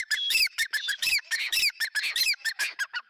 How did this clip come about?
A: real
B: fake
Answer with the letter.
B